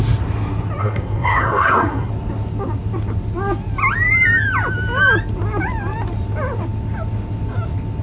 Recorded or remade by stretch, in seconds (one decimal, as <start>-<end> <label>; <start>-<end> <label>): 0.0-0.8 recorded; 0.8-2.1 remade; 2.1-8.0 recorded